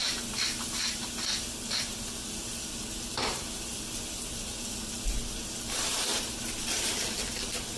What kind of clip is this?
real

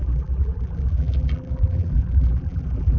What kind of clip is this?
fake